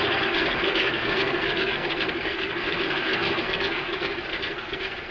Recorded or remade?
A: remade